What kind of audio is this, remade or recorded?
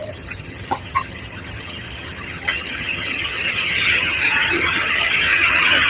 remade